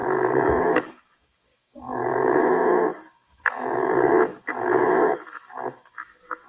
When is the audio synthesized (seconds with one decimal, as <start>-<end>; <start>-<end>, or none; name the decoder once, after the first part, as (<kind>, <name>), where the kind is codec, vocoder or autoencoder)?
0.6-6.5 (autoencoder, DAC-VAE)

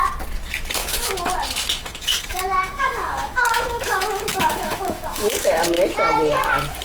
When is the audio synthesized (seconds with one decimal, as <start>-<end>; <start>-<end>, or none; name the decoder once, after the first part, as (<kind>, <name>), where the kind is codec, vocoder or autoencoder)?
0.8-1.3 (autoencoder, DAC-VAE); 1.8-5.6

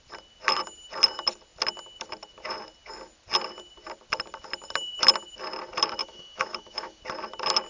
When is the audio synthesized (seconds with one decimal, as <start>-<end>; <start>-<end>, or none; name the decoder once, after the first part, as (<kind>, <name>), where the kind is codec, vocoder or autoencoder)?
6.0-7.0 (autoencoder, DAC-VAE)

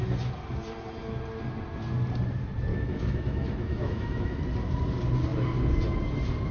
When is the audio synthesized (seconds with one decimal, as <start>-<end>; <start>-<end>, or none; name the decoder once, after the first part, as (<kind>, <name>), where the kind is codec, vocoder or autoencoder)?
2.7-4.4 (autoencoder, DAC-VAE)

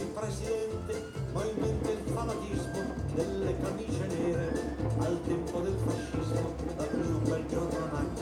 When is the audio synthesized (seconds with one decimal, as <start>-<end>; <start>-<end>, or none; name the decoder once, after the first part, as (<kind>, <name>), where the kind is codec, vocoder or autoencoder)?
none

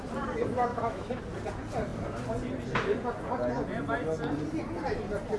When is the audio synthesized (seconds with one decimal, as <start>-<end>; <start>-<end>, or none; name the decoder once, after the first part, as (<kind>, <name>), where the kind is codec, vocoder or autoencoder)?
0.7-1.2 (autoencoder, DAC-VAE)

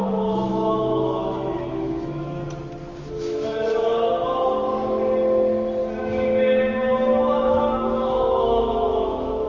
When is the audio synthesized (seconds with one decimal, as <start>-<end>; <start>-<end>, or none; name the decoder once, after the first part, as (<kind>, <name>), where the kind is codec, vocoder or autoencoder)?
0.0-2.4 (autoencoder, DAC-VAE); 3.1-3.9; 6.0-9.5

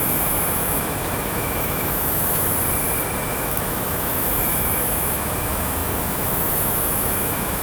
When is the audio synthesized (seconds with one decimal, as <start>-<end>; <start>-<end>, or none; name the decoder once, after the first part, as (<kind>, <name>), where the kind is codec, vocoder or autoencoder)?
0.0-2.5 (autoencoder, DAC-VAE); 3.3-7.6